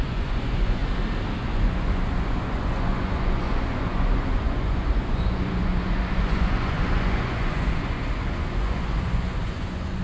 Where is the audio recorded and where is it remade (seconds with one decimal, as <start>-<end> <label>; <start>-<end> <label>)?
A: 0.0-0.8 remade; 0.8-1.4 recorded; 1.4-10.0 remade